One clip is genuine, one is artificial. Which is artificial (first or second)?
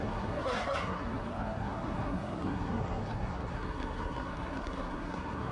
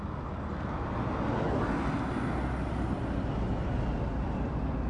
first